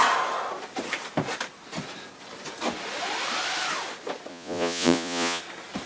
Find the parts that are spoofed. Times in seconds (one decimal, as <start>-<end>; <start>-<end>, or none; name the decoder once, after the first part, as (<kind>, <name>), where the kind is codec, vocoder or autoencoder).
4.3-5.4 (vocoder, Vocos)